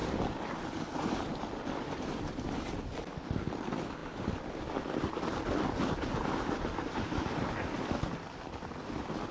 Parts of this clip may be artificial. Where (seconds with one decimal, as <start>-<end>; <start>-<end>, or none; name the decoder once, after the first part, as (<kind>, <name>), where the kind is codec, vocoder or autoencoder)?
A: none